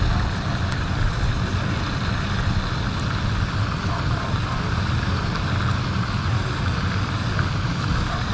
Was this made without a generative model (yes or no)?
yes